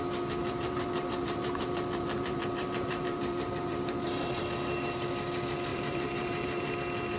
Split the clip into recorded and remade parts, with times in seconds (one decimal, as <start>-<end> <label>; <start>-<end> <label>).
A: 0.0-0.4 recorded; 0.4-4.4 remade; 4.4-5.7 recorded; 5.7-6.7 remade; 6.7-7.2 recorded